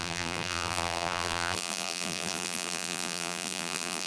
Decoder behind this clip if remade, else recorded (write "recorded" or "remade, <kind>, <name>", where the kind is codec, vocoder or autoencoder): remade, vocoder, BigVGAN v2